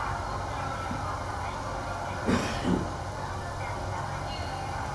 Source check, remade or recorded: recorded